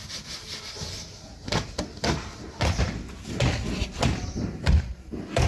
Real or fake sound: real